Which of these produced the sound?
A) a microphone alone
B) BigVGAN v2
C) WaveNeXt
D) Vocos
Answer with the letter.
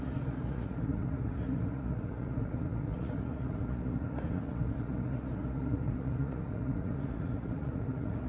D